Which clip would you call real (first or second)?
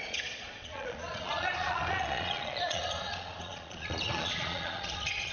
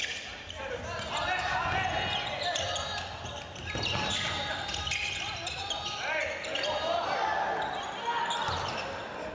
second